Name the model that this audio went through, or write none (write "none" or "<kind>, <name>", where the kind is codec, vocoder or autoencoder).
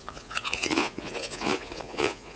vocoder, Vocos